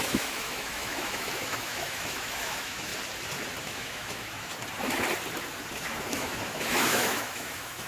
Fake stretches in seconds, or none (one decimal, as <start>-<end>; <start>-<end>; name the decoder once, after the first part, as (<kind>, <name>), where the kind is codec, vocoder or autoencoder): 0.0-2.9 (autoencoder, DAC-VAE); 3.6-4.5; 6.1-7.9